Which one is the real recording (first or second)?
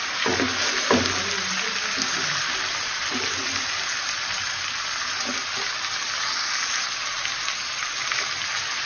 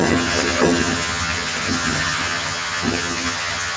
first